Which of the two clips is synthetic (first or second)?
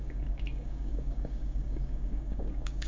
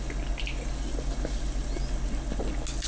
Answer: first